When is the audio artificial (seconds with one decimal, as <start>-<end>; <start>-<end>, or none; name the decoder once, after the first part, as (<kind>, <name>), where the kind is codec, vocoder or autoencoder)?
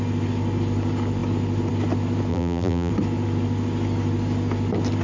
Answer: 2.3-2.9 (vocoder, BigVGAN v2)